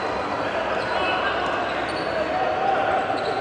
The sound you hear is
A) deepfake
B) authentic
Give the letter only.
B